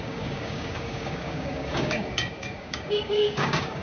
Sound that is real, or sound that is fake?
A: fake